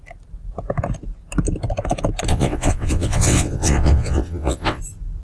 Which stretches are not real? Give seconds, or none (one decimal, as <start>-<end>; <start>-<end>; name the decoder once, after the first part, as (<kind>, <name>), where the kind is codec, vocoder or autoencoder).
2.3-4.8 (vocoder, WaveNeXt)